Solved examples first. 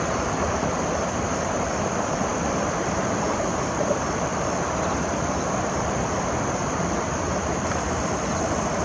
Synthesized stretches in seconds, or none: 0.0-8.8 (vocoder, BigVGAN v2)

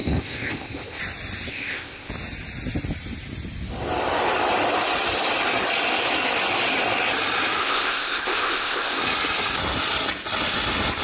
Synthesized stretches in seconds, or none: 0.0-1.0 (codec, ZipCodec); 1.5-2.1; 7.6-9.0

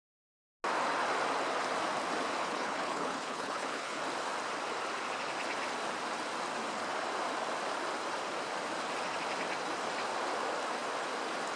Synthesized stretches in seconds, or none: 2.4-4.0 (codec, HILCodec)

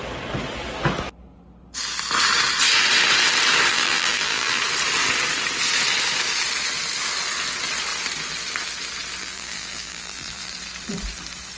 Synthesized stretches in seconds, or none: 3.7-4.6 (vocoder, BigVGAN v2); 9.2-10.5

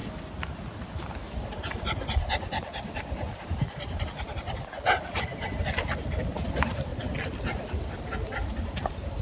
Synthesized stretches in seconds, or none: none

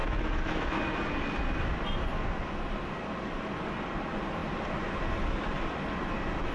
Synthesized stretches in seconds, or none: 0.0-0.8 (autoencoder, DAC-VAE)